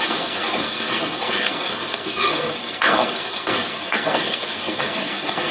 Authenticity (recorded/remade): remade